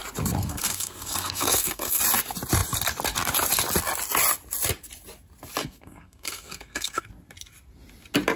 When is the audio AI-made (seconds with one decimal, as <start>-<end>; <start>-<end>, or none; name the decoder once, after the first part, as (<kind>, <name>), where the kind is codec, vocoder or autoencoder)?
0.4-2.0 (codec, SNAC); 5.6-7.1